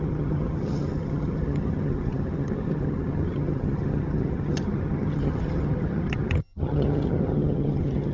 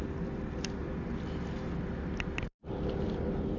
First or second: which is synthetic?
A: first